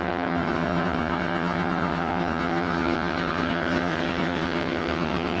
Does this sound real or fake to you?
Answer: fake